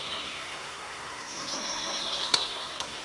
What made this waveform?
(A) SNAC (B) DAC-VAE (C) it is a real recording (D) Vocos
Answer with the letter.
A